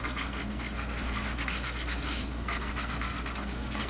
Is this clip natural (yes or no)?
no